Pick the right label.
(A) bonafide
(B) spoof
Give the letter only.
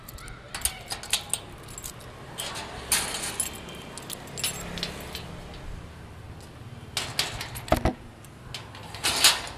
A